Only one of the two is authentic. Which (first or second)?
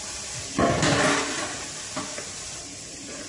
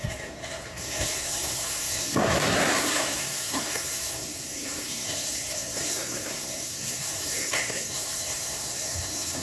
first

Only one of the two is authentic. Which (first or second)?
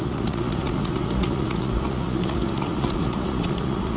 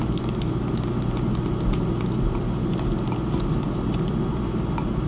second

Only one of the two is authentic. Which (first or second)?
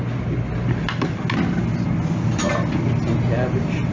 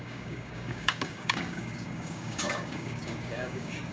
first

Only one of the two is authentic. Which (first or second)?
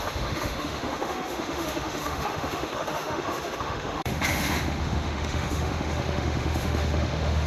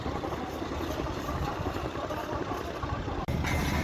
second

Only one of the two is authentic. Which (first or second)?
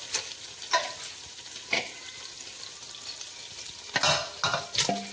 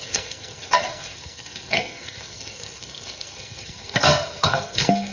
first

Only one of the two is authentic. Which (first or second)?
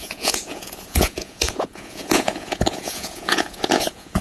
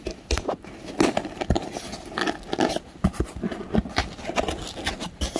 second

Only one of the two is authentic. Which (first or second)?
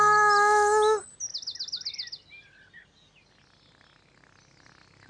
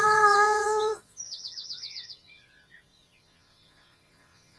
first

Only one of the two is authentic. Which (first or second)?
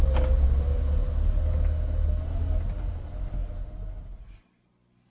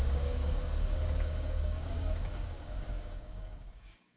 first